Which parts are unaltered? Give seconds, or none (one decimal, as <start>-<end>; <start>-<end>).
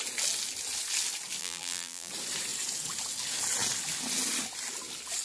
0.0-1.4; 2.1-5.2